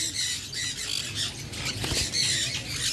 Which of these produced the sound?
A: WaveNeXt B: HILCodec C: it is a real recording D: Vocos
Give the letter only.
C